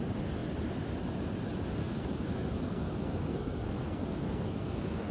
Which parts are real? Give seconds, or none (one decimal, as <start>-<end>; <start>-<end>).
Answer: 0.0-1.8